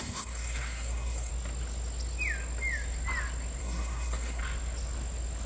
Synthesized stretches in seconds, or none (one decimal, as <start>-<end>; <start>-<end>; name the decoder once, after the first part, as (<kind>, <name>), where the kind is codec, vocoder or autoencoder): 0.0-1.3 (codec, SNAC); 3.6-4.4